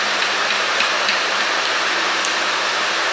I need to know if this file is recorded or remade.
remade